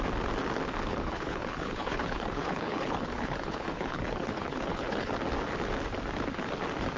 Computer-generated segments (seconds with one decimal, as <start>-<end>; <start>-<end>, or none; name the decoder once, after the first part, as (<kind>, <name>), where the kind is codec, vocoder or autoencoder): 0.9-5.1 (codec, HILCodec)